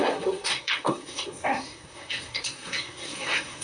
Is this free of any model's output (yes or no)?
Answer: no